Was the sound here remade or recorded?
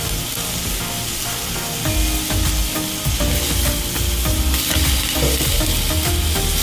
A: recorded